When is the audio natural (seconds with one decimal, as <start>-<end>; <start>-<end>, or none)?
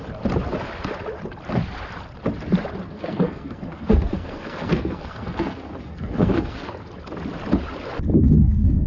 0.0-2.9; 6.9-8.1